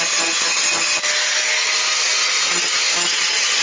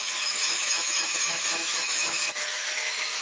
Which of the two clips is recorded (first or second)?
first